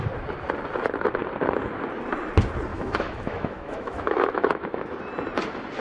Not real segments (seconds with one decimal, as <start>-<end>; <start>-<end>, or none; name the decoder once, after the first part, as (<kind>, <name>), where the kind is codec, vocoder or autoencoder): 2.7-5.0 (autoencoder, DAC-VAE)